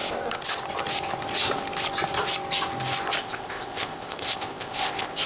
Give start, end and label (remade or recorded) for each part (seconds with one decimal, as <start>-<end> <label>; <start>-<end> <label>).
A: 0.0-3.2 recorded; 3.2-5.3 remade